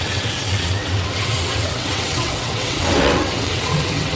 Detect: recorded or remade remade